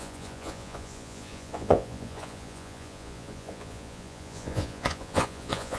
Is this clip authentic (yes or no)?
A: no